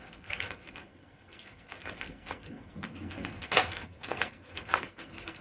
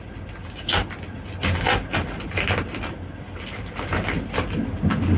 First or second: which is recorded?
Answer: second